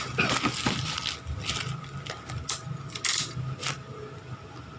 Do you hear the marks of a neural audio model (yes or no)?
no